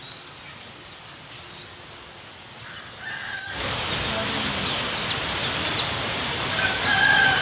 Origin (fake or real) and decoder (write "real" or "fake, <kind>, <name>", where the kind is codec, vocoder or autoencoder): real